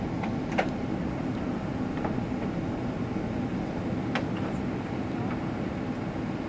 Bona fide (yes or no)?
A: yes